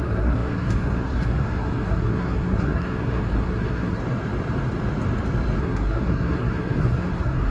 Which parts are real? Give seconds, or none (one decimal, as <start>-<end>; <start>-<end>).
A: 4.0-5.6